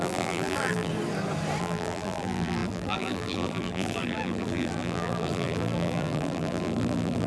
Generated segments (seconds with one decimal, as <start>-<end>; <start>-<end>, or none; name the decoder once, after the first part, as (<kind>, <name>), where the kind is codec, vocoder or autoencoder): 0.0-0.9 (vocoder, BigVGAN v2); 1.6-7.3